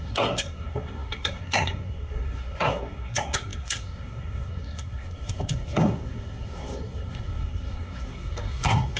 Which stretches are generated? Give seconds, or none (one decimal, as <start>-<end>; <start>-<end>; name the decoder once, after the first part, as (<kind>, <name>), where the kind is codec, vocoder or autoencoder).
0.0-9.0 (codec, SNAC)